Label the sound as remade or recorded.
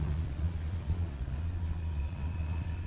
remade